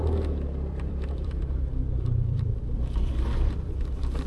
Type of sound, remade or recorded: remade